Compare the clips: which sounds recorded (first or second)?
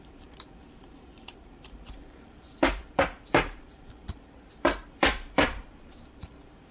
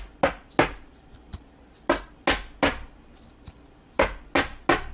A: second